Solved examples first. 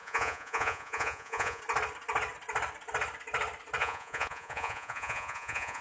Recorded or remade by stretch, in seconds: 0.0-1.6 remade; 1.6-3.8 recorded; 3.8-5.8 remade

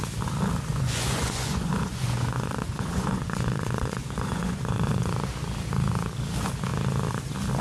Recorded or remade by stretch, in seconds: 0.0-0.7 recorded; 0.7-5.1 remade; 5.1-7.6 recorded

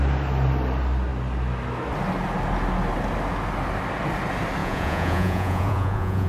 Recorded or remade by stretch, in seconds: 0.0-4.6 recorded; 4.6-6.3 remade

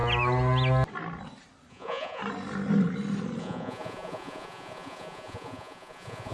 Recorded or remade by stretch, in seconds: 0.0-1.7 recorded; 1.7-2.2 remade; 2.2-3.4 recorded; 3.4-6.3 remade